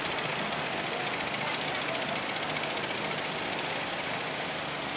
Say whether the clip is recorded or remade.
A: recorded